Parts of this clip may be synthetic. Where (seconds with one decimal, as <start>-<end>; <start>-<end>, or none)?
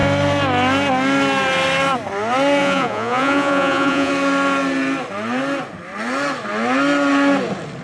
2.6-4.1